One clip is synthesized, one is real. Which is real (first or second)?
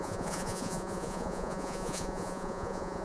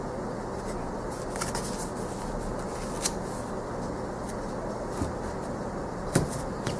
second